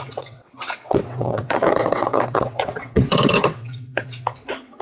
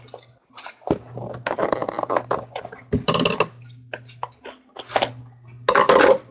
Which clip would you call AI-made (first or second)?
first